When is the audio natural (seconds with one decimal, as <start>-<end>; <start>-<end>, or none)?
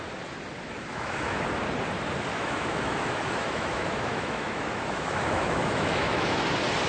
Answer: 0.0-0.9; 1.4-2.3; 6.4-6.9